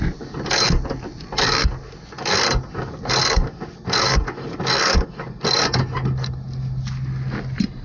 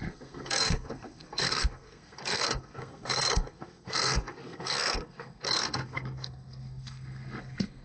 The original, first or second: first